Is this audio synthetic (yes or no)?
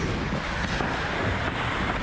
no